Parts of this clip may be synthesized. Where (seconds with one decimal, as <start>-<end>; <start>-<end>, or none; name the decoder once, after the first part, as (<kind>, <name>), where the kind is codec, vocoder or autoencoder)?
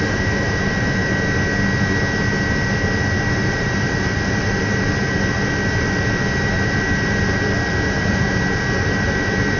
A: 0.0-1.0 (vocoder, BigVGAN v2); 3.3-9.6